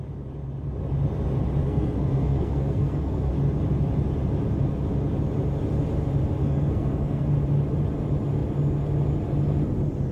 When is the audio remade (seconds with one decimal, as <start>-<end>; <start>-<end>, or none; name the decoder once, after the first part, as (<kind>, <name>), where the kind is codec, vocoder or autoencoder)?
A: 1.6-3.3 (codec, SNAC); 6.4-7.3